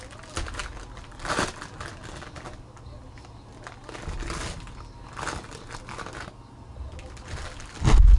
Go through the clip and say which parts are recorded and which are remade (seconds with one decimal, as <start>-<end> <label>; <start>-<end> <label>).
0.0-8.2 recorded